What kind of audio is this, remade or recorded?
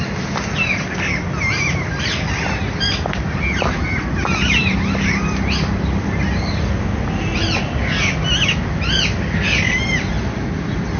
recorded